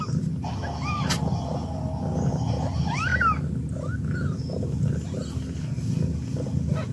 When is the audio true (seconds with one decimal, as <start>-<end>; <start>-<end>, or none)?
0.0-6.9